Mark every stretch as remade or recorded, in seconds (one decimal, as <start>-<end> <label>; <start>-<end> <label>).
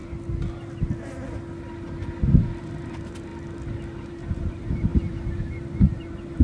0.0-2.6 recorded; 2.6-3.3 remade; 3.3-4.1 recorded; 4.1-6.4 remade